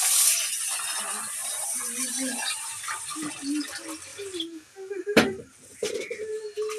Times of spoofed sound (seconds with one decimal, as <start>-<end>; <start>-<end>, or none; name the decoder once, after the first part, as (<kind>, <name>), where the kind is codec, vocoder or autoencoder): 1.4-3.3 (vocoder, BigVGAN v2); 4.1-5.9